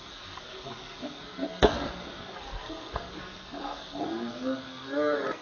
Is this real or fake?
fake